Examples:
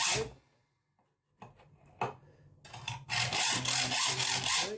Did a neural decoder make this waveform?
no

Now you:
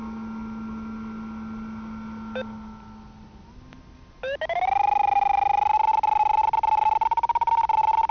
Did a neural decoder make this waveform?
no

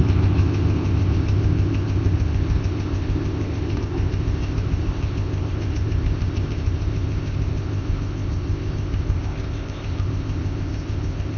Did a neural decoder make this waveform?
yes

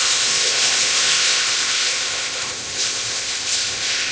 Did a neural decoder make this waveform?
yes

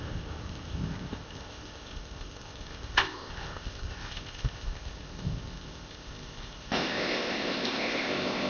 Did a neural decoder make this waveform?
yes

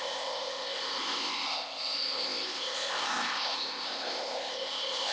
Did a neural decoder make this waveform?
yes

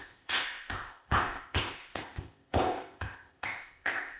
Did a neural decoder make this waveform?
yes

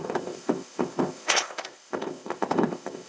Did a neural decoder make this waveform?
yes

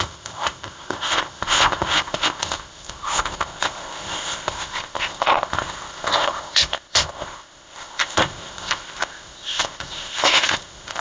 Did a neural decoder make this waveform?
yes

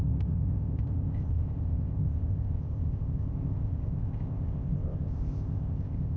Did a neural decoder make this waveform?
yes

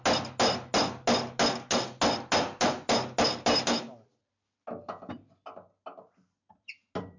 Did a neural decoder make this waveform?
no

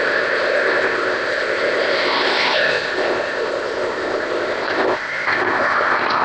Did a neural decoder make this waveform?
yes